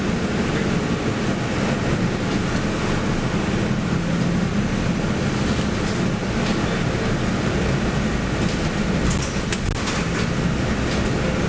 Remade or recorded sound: recorded